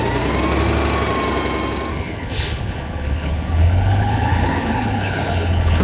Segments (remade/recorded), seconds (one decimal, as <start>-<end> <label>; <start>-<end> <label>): 0.0-1.9 recorded; 1.9-5.8 remade